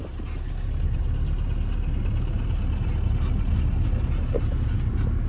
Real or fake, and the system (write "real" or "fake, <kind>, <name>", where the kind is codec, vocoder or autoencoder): real